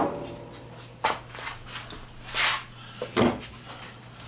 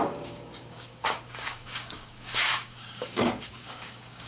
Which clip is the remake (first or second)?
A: second